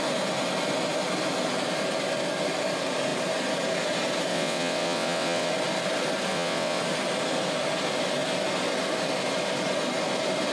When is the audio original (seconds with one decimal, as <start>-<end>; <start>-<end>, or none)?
0.0-4.3; 5.5-6.3; 6.8-10.5